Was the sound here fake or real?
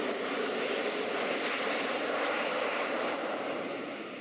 real